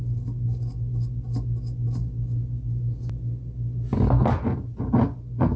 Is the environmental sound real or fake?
real